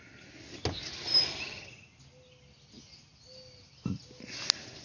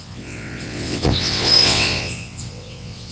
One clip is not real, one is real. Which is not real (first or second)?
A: second